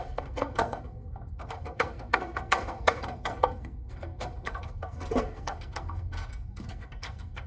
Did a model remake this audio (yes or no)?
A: yes